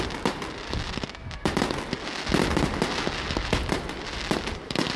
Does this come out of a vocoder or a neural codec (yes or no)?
no